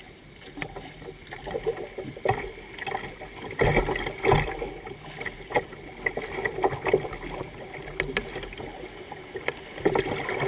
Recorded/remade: recorded